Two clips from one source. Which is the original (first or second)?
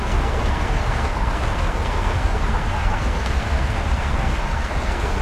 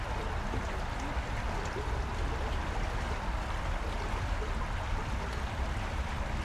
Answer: second